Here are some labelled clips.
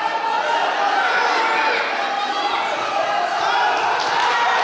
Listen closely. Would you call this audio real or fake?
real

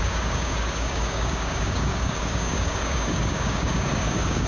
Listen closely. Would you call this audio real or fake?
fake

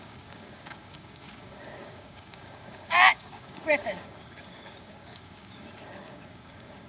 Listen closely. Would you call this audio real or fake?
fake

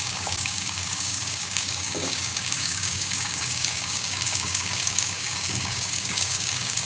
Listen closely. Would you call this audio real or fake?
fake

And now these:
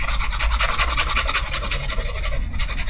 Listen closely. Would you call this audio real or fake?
real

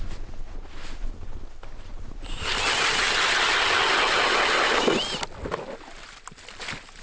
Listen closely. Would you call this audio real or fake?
real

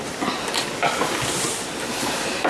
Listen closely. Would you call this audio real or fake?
real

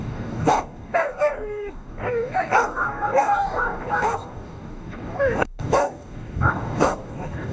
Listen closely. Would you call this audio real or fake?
fake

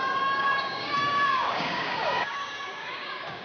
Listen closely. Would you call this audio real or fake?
fake